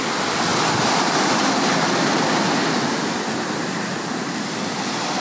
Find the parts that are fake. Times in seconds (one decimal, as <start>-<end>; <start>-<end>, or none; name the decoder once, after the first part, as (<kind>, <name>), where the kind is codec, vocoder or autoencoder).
0.5-2.3 (vocoder, BigVGAN v2)